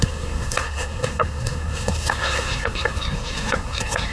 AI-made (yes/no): yes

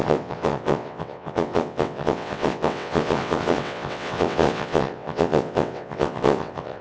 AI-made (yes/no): yes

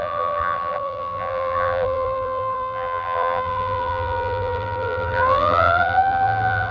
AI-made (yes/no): yes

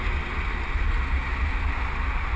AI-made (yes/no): no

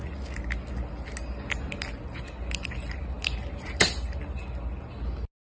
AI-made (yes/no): no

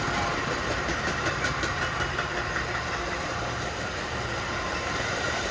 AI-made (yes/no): yes